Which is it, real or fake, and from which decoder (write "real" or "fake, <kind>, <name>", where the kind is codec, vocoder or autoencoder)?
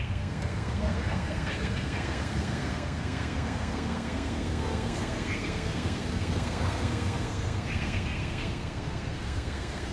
fake, codec, SNAC